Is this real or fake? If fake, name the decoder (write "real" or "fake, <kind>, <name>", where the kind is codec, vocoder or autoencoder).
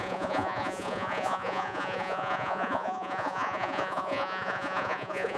fake, vocoder, Vocos